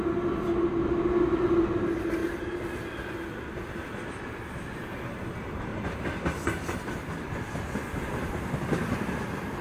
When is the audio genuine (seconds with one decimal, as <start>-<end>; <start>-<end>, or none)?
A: 0.0-5.7; 6.8-9.6